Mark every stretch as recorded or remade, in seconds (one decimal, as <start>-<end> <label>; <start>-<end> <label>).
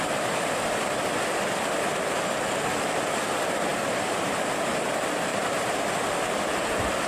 0.0-5.3 recorded; 5.3-5.9 remade; 5.9-7.1 recorded